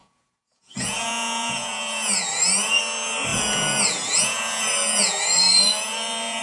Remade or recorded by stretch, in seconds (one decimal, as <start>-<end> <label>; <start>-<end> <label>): 0.0-2.8 remade; 2.8-3.3 recorded; 3.3-6.4 remade